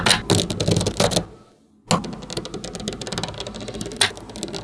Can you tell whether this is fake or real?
real